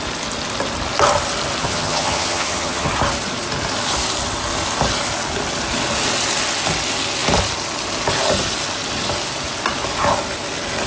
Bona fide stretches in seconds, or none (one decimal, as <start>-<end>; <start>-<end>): 0.0-1.6; 2.9-10.9